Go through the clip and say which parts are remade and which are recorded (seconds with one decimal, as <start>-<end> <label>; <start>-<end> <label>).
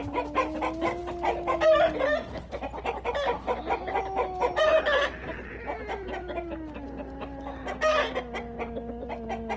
0.0-9.6 recorded